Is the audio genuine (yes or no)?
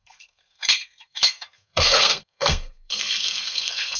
no